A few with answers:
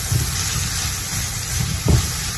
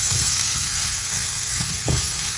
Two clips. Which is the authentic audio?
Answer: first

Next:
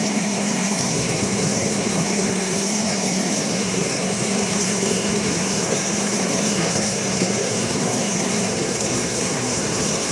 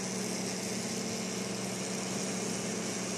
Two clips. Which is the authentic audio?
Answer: second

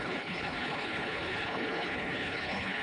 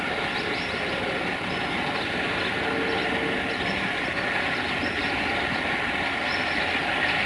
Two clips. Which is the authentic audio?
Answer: second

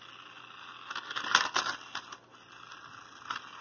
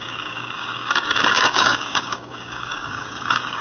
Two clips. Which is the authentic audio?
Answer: first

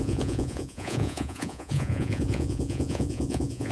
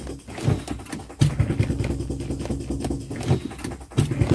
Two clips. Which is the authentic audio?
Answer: second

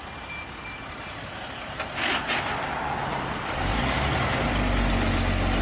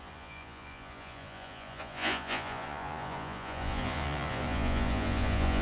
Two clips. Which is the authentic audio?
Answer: first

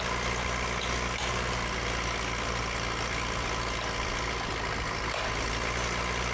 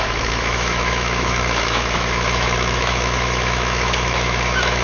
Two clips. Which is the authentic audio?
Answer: first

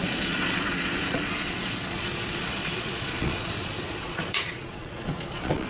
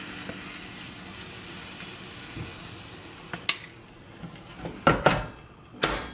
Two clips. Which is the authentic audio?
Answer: second